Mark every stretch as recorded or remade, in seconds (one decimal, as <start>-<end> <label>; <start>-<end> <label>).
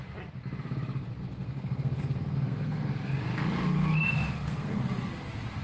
0.0-1.2 recorded; 1.2-2.9 remade; 2.9-3.6 recorded; 3.6-4.8 remade; 4.8-5.6 recorded